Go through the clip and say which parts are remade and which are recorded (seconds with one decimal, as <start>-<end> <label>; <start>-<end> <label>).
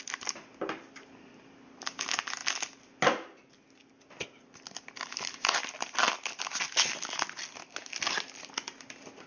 0.0-9.3 recorded